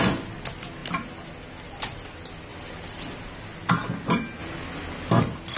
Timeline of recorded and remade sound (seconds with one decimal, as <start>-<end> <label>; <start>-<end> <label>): 0.0-5.6 recorded